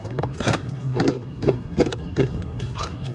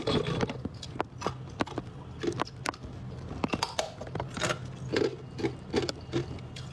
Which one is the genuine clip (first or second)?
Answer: second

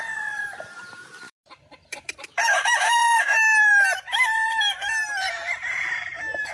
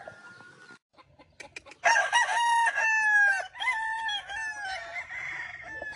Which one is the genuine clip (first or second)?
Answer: second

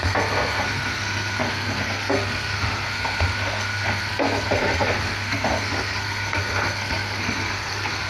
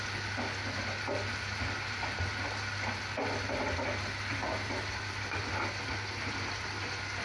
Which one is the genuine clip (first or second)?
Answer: second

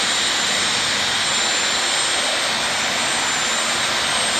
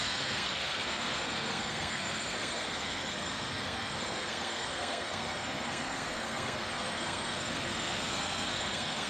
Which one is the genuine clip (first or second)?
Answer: first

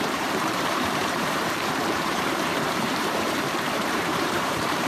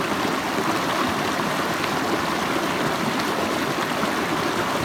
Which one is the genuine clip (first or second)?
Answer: second